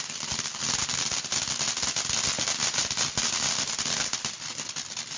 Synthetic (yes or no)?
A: no